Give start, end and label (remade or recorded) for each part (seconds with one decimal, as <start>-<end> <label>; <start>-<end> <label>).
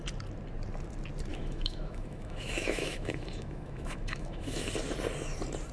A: 0.0-1.3 recorded; 1.3-4.7 remade; 4.7-5.7 recorded